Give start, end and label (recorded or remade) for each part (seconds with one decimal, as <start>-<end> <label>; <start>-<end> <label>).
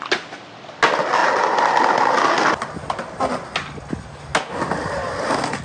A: 0.0-5.6 recorded